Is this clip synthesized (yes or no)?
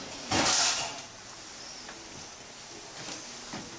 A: no